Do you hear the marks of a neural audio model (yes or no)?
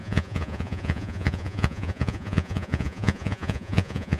yes